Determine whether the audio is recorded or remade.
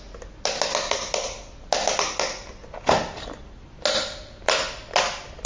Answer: recorded